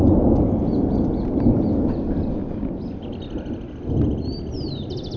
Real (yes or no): yes